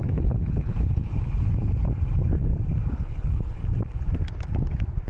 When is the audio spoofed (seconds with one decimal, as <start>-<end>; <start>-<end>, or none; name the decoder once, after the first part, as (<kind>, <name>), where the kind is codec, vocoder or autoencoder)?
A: 0.0-1.0 (codec, HILCodec); 2.9-3.6